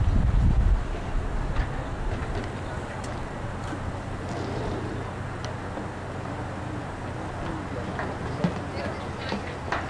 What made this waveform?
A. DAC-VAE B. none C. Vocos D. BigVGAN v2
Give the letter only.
B